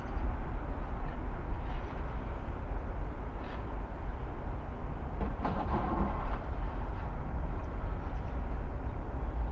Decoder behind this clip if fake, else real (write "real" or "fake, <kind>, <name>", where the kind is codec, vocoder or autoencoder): real